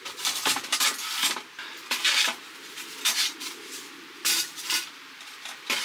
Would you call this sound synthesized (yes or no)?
yes